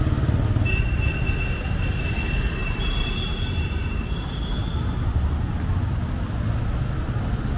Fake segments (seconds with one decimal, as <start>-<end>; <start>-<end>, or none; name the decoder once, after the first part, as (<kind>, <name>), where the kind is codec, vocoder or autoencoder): 2.6-5.6 (vocoder, BigVGAN v2)